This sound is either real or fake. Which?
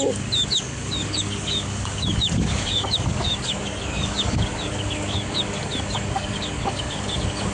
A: fake